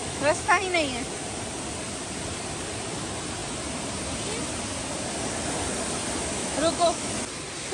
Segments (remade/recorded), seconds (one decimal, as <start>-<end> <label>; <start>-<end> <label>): 0.0-0.6 remade; 0.6-6.4 recorded; 6.4-7.1 remade; 7.1-7.7 recorded